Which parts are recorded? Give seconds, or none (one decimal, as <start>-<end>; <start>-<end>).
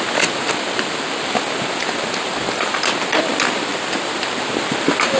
0.0-5.2